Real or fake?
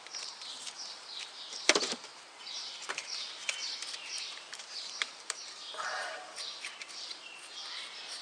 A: fake